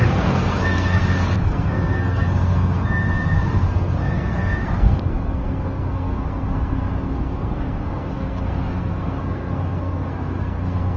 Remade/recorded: remade